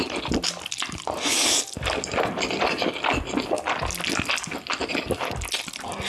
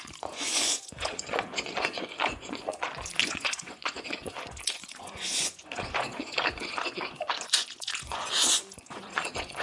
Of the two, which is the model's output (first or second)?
second